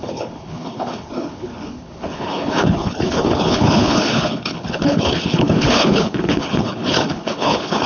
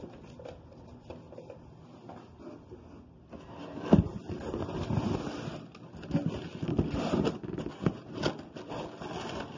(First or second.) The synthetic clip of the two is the first